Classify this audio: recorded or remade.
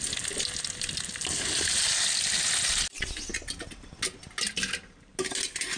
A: recorded